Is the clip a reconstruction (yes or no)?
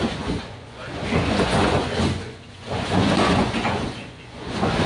yes